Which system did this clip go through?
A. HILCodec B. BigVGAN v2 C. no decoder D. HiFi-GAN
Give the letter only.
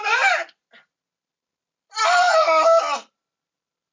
B